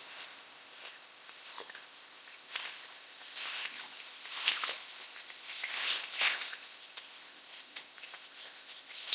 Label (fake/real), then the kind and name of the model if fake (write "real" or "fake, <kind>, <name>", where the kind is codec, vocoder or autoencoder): fake, codec, ZipCodec